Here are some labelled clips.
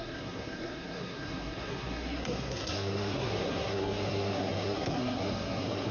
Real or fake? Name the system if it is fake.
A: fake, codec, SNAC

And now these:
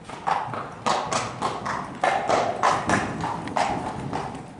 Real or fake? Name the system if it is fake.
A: real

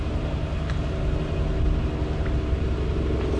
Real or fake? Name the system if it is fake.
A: real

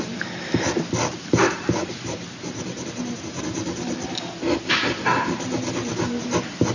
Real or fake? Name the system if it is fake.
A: real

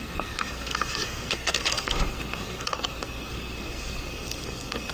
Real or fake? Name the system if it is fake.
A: fake, codec, SNAC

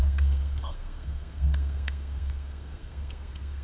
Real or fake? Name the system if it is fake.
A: fake, codec, SNAC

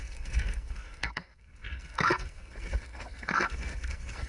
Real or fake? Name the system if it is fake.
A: fake, codec, SNAC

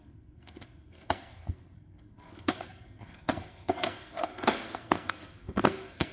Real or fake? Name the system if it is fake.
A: fake, codec, SNAC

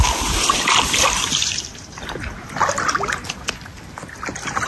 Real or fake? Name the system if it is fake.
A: real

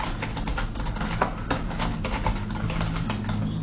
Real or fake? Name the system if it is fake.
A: real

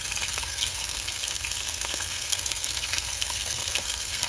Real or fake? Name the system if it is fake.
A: fake, codec, SNAC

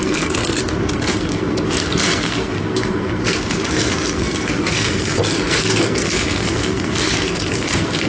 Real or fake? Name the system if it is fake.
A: fake, codec, SNAC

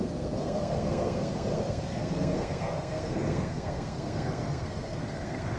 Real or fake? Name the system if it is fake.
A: fake, codec, SNAC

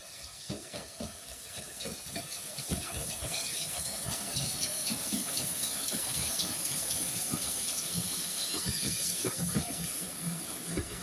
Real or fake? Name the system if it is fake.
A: fake, codec, SNAC